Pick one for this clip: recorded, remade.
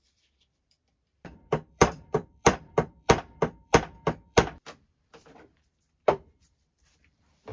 remade